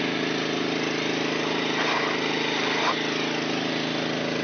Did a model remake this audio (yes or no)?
no